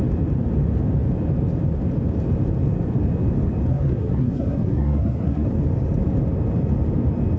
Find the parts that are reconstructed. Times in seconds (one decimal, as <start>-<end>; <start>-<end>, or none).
3.7-5.5

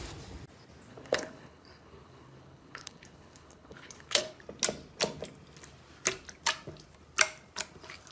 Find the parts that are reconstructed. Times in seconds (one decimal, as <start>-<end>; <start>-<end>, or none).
0.9-4.4